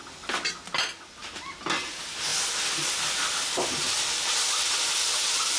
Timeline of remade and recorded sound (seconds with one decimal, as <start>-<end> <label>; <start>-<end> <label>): 0.0-2.3 recorded; 2.3-5.6 remade